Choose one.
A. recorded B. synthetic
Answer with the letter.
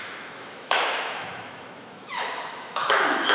B